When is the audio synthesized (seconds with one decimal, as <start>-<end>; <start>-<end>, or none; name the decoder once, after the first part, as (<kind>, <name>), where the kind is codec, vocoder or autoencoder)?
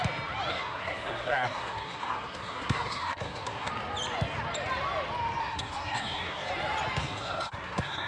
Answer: 0.5-3.7 (codec, SNAC); 5.4-6.5; 7.0-8.1